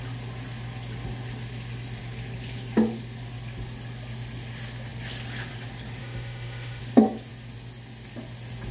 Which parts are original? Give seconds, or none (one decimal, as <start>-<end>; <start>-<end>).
0.0-6.0; 6.8-8.7